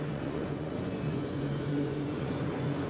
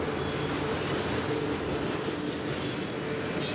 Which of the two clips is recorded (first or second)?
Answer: second